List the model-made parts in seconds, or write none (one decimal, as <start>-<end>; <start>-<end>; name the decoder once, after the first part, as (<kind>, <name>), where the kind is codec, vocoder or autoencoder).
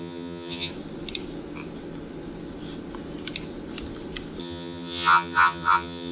0.0-0.7 (vocoder, HiFi-GAN); 4.4-6.1